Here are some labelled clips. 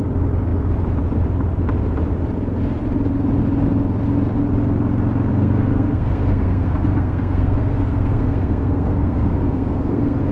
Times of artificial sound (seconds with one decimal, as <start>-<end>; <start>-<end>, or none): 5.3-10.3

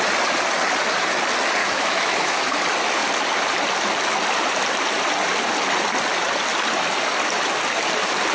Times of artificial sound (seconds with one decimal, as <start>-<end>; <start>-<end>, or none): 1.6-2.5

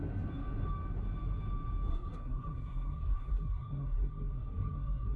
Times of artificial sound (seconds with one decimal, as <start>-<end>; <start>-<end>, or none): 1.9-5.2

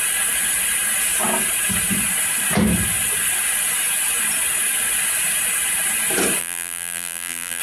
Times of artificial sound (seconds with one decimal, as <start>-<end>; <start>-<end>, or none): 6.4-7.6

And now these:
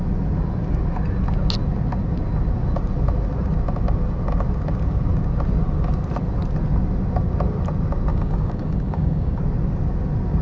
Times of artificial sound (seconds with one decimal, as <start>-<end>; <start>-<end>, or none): 8.1-9.4

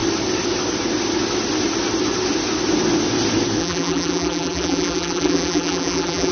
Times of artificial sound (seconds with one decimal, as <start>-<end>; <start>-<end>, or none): 3.6-6.3